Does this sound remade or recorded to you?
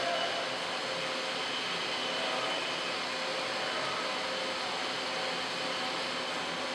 recorded